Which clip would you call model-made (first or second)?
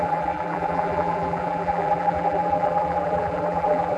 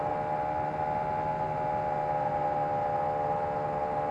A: first